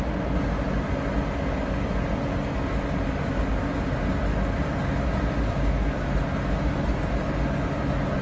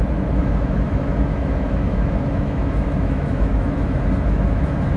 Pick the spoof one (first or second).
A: second